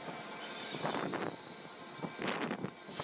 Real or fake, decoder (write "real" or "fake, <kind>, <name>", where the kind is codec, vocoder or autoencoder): real